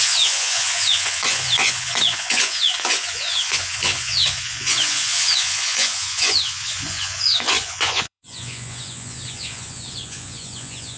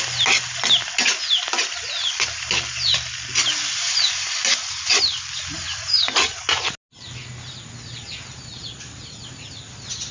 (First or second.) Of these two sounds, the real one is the second